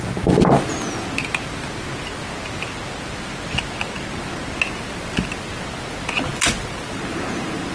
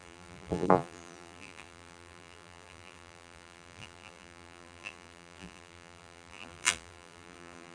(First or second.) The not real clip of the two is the second